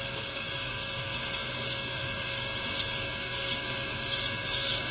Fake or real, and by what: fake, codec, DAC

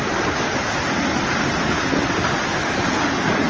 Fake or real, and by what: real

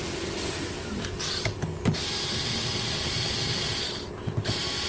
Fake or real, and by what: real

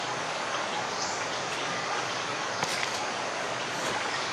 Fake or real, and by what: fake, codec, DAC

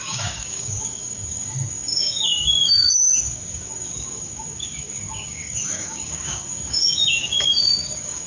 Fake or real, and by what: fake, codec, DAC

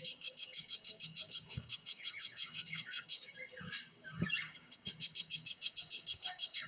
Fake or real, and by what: fake, codec, DAC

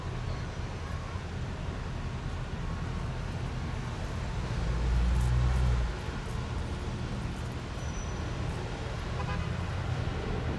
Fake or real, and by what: real